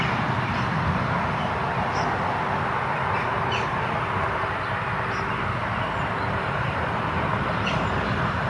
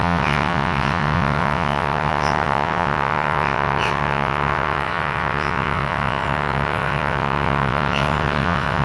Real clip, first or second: first